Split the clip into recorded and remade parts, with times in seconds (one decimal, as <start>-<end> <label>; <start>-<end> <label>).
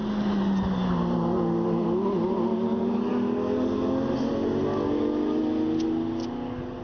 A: 0.0-6.8 recorded